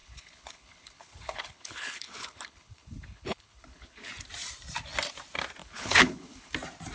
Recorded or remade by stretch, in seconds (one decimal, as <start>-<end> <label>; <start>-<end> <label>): 0.0-4.1 remade; 4.1-5.6 recorded; 5.6-6.5 remade; 6.5-6.9 recorded